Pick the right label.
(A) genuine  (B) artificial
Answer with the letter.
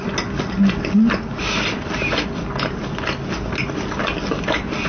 A